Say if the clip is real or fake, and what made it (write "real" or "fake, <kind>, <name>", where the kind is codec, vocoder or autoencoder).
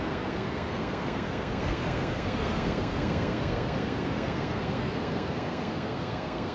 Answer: fake, codec, SNAC